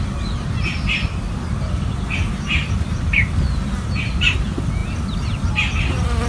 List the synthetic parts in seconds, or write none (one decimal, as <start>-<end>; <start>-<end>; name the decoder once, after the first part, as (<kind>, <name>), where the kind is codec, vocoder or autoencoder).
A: none